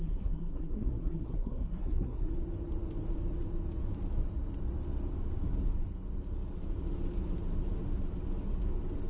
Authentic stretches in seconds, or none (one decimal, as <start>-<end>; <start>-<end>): 2.3-9.1